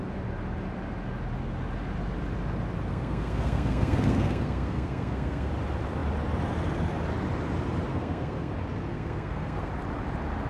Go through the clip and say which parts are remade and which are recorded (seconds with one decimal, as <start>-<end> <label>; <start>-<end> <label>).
0.0-2.9 recorded; 2.9-5.5 remade; 5.5-7.9 recorded; 7.9-8.5 remade; 8.5-8.9 recorded; 8.9-9.7 remade; 9.7-10.5 recorded